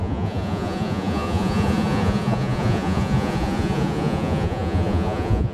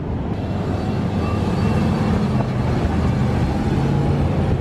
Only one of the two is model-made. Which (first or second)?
first